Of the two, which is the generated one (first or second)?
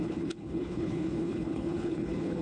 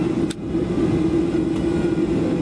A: first